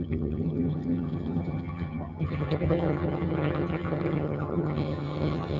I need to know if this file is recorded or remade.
remade